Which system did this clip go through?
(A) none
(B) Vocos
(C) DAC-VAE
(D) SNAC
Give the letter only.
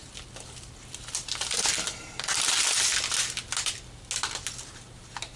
A